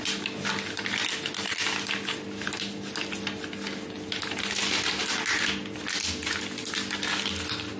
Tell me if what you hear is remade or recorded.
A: recorded